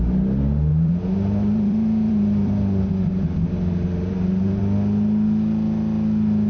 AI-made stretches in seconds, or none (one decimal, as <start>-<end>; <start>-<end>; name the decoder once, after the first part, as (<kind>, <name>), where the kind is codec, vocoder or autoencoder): 0.7-4.6 (vocoder, BigVGAN v2)